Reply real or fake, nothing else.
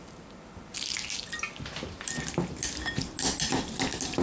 real